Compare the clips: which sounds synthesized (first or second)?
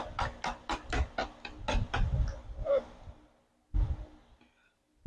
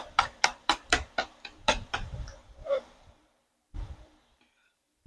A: second